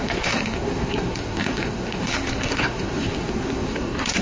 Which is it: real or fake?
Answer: fake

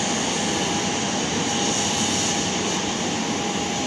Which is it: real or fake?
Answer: real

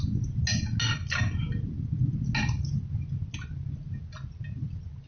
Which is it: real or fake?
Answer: real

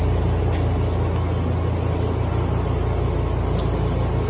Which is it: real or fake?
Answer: real